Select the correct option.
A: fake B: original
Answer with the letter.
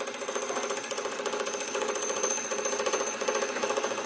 A